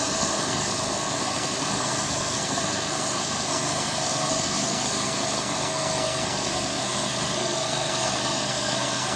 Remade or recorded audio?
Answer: remade